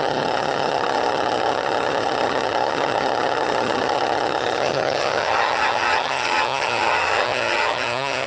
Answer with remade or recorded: remade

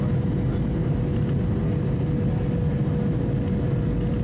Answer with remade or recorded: recorded